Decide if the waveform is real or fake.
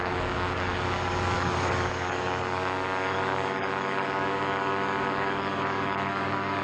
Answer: fake